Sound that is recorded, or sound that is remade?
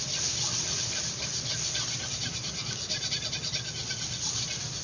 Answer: recorded